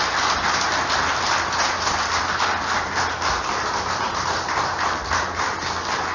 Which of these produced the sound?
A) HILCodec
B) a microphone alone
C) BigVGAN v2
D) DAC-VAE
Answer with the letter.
B